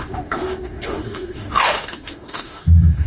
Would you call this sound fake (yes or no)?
yes